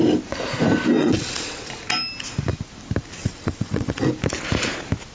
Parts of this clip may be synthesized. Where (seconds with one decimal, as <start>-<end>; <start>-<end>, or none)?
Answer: 1.0-1.7; 3.2-4.1